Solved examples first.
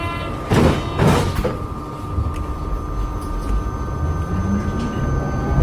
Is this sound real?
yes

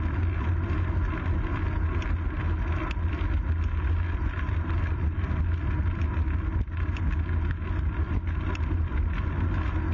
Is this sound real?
yes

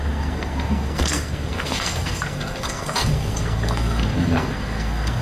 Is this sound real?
no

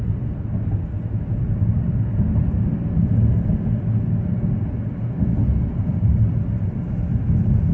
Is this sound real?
yes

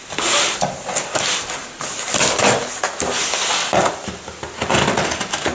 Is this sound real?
yes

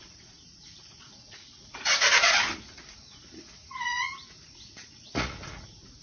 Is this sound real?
no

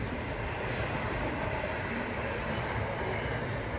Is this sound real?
yes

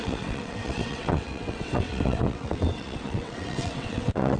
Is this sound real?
no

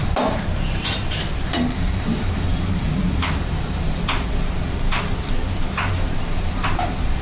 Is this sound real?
no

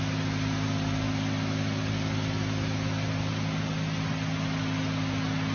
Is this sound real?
yes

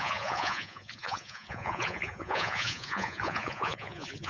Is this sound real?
no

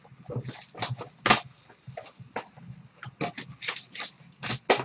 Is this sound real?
yes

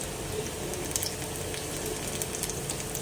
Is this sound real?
yes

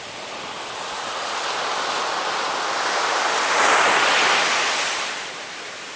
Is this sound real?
yes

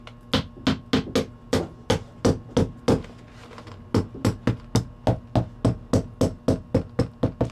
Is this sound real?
yes